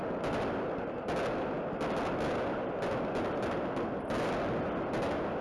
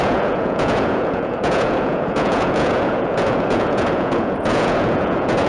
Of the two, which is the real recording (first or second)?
first